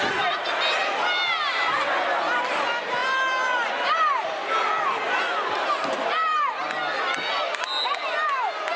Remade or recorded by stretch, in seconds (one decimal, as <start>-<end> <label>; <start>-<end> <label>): 0.0-8.8 recorded